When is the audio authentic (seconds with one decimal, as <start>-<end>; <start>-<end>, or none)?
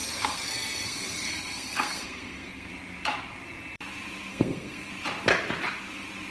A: 2.7-4.3; 4.9-6.3